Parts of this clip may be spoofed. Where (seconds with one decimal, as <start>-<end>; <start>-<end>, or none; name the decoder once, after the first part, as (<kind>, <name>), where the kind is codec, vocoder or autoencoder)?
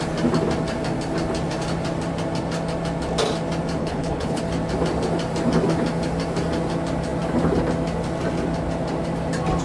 3.8-4.4 (codec, HILCodec)